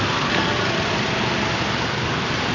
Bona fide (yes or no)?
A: yes